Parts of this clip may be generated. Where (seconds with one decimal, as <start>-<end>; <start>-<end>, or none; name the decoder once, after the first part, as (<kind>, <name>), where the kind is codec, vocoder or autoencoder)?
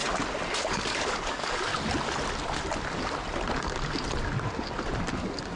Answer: 0.6-1.7 (codec, DAC); 5.1-5.6